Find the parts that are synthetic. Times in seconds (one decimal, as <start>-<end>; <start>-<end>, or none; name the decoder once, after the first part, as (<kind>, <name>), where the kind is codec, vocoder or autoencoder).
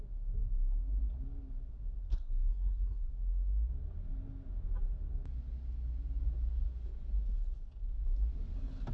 2.1-3.1 (codec, SNAC)